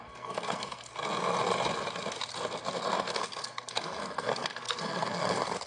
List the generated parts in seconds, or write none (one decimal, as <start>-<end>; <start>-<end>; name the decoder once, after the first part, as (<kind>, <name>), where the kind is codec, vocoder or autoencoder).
0.0-0.9 (codec, SNAC); 3.1-5.7